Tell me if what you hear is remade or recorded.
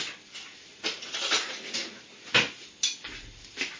recorded